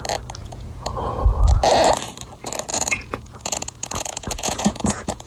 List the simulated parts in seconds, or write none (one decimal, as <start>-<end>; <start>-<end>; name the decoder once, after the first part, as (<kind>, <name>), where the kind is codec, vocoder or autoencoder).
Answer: 0.4-1.3 (vocoder, Vocos); 2.7-5.3